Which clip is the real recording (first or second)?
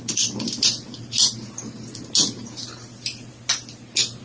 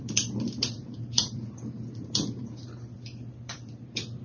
first